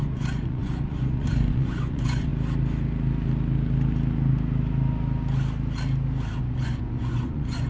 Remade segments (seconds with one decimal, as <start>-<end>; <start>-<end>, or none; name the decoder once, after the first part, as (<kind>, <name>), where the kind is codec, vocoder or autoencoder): 0.0-2.3 (vocoder, Vocos); 6.4-7.7